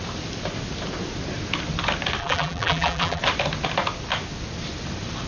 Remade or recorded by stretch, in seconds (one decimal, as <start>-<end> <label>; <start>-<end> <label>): 0.0-2.2 recorded; 2.2-3.2 remade; 3.2-5.3 recorded